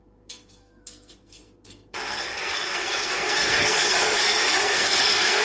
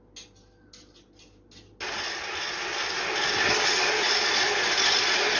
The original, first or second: second